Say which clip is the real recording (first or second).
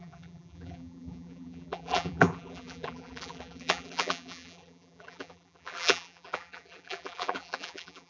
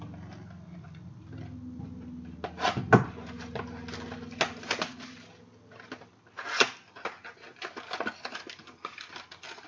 second